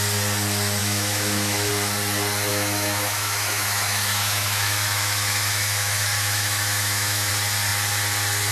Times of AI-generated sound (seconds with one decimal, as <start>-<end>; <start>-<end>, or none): 0.8-1.7; 2.5-7.3